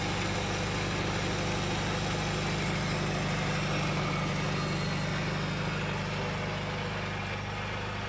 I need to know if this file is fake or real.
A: real